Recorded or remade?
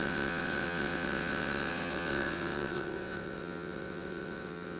remade